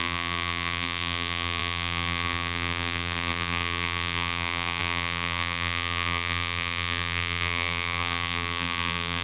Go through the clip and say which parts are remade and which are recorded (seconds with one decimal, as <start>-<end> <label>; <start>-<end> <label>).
0.0-9.2 remade